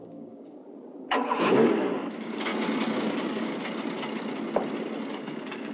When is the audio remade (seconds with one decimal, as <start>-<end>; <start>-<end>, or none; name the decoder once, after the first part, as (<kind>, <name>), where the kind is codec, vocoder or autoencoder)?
0.0-0.6 (codec, DAC); 1.4-2.5; 3.0-3.5; 5.1-5.7